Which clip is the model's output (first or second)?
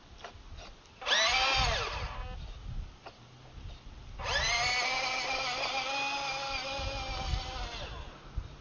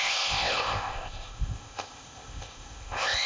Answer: second